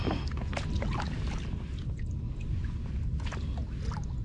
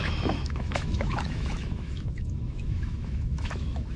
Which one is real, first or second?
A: first